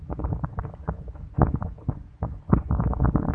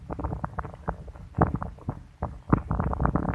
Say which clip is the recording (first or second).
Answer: second